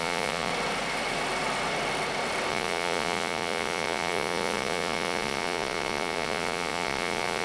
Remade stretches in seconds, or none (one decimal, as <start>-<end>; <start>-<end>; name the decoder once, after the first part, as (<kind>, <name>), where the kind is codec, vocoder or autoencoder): 0.0-0.5 (vocoder, Vocos); 2.5-7.4